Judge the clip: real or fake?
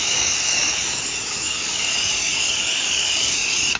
fake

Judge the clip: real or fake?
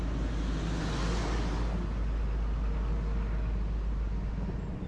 real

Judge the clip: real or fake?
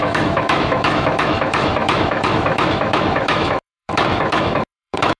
fake